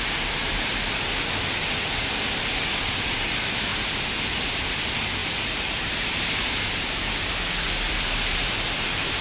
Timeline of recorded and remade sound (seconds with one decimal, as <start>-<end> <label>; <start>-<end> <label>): 0.0-0.7 remade; 0.7-2.8 recorded; 2.8-3.7 remade; 3.7-4.3 recorded; 4.3-9.2 remade

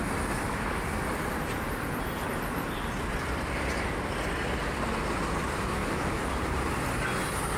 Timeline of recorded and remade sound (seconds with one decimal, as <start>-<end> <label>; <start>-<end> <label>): 0.0-3.1 recorded; 3.1-3.8 remade; 3.8-5.8 recorded; 5.8-6.8 remade; 6.8-7.6 recorded

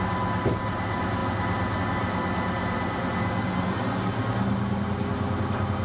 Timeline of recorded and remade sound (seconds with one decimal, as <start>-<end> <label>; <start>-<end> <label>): 0.0-5.8 recorded

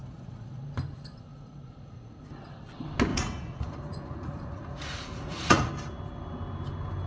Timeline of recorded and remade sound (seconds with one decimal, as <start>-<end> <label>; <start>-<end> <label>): 0.0-0.6 remade; 0.6-1.3 recorded; 1.3-2.2 remade; 2.2-3.1 recorded; 3.1-5.7 remade; 5.7-7.1 recorded